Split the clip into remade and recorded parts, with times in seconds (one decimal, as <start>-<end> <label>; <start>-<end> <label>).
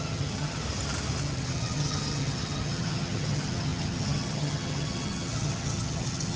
0.0-0.6 remade; 0.6-1.2 recorded; 1.2-6.4 remade